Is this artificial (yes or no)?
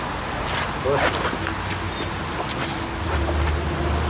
no